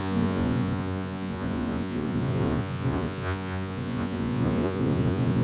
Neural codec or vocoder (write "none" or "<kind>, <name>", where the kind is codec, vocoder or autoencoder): vocoder, Vocos